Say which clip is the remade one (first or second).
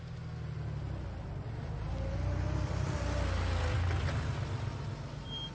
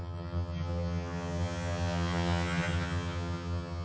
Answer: second